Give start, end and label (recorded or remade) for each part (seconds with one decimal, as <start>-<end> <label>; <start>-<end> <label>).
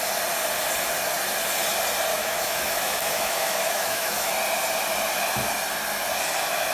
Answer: 0.0-2.1 recorded; 2.1-4.3 remade; 4.3-6.7 recorded